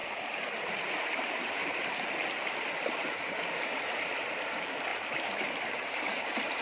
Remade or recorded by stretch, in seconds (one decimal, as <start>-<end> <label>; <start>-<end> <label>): 0.0-0.9 recorded; 0.9-1.6 remade; 1.6-4.4 recorded; 4.4-6.6 remade